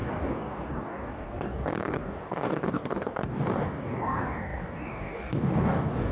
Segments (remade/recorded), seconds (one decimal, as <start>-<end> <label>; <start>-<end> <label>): 0.0-6.1 remade